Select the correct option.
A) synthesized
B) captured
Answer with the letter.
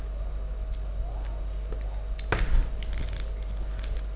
B